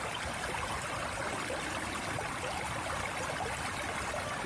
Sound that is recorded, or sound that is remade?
recorded